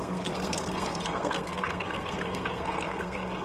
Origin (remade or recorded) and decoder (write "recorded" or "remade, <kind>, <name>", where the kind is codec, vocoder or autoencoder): remade, codec, SNAC